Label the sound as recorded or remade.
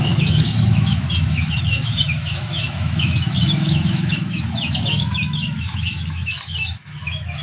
remade